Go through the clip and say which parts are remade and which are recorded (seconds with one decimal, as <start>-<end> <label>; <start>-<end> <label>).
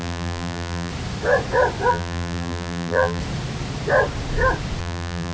0.0-0.9 remade; 0.9-1.9 recorded; 1.9-3.2 remade; 3.2-4.8 recorded; 4.8-5.3 remade